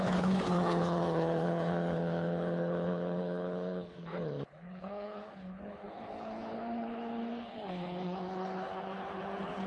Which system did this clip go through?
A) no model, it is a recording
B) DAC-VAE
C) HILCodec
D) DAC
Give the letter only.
C